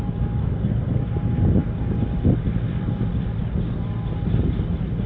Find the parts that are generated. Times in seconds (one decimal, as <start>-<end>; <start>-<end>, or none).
0.4-1.0